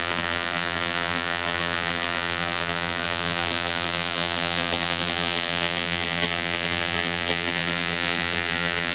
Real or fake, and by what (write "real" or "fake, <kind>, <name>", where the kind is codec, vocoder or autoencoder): fake, vocoder, BigVGAN v2